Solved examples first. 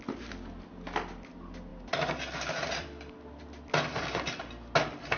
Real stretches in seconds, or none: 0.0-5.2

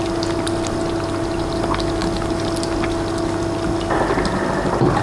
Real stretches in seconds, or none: 0.0-5.0

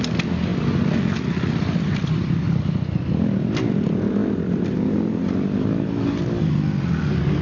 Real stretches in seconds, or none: 0.0-7.4

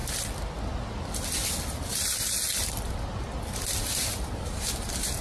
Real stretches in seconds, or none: 0.0-5.2

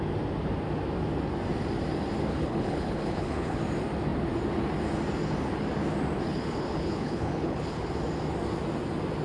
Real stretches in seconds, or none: 0.0-2.3; 3.6-6.3; 7.9-9.2

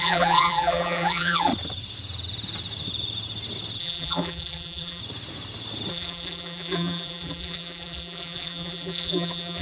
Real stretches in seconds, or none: 1.5-3.8; 5.0-5.9